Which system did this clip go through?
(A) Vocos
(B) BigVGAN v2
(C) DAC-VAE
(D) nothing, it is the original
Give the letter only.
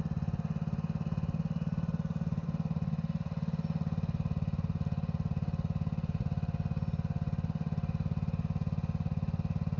D